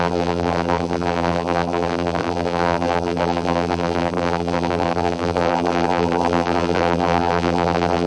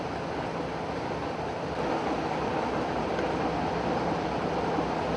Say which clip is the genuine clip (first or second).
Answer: second